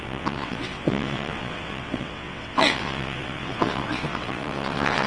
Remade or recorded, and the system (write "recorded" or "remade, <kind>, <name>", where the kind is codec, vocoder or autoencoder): remade, vocoder, WaveNeXt